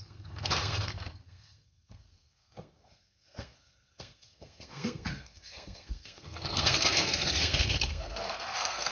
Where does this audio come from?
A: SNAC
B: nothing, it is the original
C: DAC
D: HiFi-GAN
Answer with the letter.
A